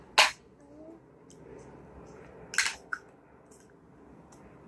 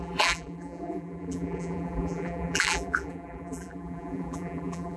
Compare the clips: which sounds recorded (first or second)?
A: first